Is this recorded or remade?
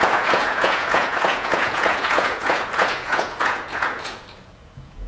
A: remade